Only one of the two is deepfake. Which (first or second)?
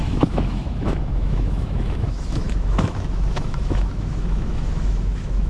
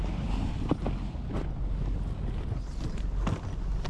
first